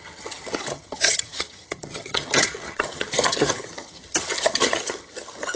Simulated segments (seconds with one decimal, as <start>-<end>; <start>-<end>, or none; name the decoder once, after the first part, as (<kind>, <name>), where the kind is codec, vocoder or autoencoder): 0.0-5.6 (vocoder, HiFi-GAN)